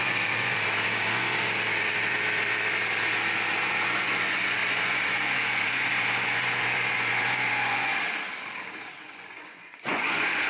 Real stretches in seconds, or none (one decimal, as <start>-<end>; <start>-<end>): 7.9-9.0